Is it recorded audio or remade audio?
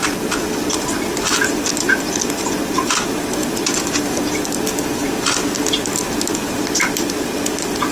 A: recorded